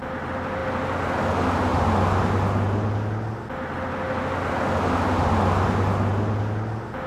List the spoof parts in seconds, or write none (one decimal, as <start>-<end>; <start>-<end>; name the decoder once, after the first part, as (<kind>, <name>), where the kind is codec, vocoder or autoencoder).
none

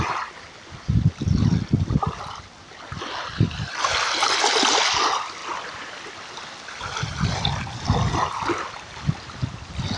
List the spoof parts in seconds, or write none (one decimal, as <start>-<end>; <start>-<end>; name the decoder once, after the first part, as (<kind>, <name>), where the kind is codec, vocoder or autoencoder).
none

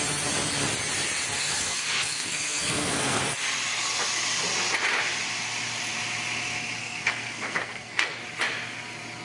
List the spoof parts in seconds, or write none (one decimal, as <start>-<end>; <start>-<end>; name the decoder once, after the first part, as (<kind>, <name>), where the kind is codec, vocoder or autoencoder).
1.4-3.2 (codec, SNAC); 6.8-8.2

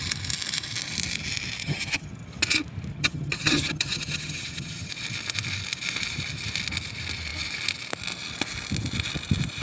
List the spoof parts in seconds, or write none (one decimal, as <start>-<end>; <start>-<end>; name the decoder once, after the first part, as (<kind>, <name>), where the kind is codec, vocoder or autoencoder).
1.6-2.3 (vocoder, HiFi-GAN); 2.9-4.9

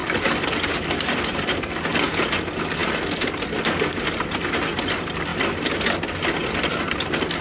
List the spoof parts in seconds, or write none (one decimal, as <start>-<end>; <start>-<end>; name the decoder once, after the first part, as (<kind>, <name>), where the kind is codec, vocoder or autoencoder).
0.0-1.8 (vocoder, BigVGAN v2)